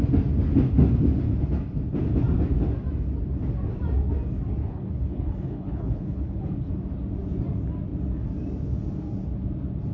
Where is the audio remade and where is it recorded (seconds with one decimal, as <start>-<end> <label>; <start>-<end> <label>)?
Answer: 0.0-4.6 recorded; 4.6-6.7 remade; 6.7-9.9 recorded